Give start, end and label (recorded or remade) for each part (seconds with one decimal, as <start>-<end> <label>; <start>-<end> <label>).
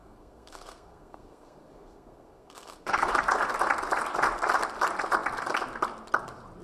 0.0-3.1 remade; 3.1-6.6 recorded